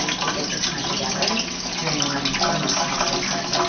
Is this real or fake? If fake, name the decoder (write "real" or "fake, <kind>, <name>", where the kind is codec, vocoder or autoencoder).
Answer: real